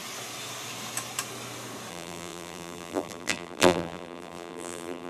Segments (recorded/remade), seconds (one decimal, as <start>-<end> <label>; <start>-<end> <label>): 0.0-1.9 recorded; 1.9-5.1 remade